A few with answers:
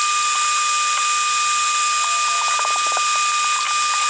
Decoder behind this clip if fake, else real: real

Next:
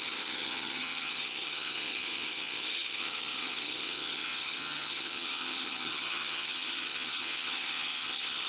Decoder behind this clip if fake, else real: fake, vocoder, HiFi-GAN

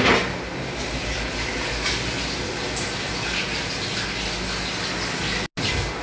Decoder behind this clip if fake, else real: real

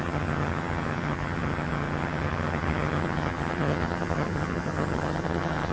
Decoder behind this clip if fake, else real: fake, vocoder, HiFi-GAN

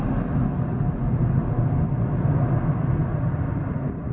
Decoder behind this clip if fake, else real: real